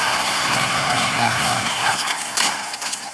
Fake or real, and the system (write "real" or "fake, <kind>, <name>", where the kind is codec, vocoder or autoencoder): fake, codec, SNAC